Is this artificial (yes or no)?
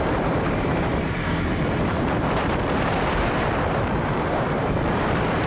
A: yes